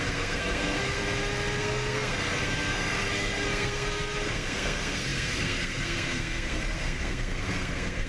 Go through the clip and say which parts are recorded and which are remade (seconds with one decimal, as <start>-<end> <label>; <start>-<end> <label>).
0.0-1.0 remade; 1.0-1.6 recorded; 1.6-8.1 remade